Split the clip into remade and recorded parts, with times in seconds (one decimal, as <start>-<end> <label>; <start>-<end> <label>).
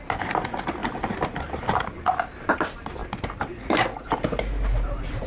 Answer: 0.0-5.3 recorded